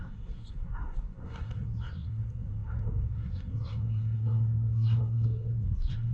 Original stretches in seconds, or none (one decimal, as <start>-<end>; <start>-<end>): none